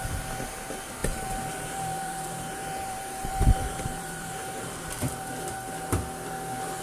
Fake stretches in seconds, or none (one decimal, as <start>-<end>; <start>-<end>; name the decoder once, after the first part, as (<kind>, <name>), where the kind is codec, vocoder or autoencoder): 1.0-4.5 (vocoder, BigVGAN v2)